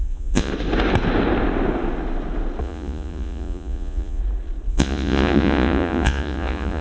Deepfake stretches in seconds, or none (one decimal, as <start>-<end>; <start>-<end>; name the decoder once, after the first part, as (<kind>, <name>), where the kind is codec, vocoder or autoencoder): 0.0-0.5 (vocoder, Vocos); 2.6-4.2; 4.7-6.8